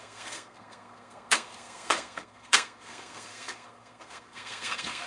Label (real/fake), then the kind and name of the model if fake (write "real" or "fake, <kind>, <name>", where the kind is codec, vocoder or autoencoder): fake, codec, SNAC